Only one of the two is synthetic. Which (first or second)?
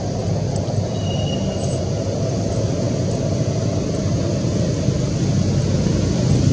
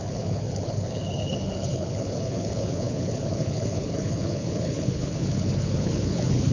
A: second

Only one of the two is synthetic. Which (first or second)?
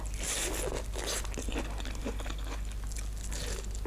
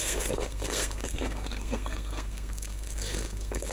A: second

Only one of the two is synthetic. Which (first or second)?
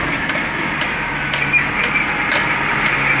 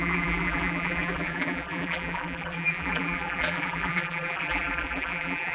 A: second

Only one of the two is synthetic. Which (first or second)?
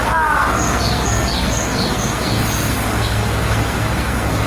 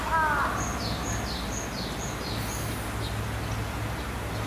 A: first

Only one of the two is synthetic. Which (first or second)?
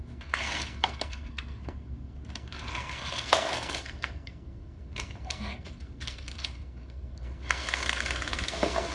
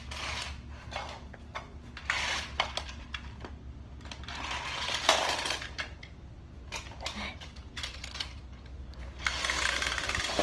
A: first